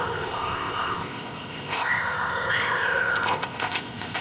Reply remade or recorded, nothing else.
remade